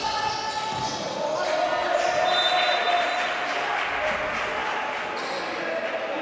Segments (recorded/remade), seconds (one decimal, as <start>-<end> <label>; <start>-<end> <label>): 0.0-4.6 recorded; 4.6-6.2 remade